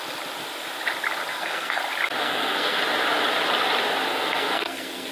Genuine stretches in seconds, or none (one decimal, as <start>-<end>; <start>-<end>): 0.0-1.3; 1.8-2.2; 2.8-4.1

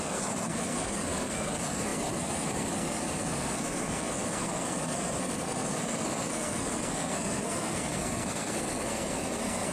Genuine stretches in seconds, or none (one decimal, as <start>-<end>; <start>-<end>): none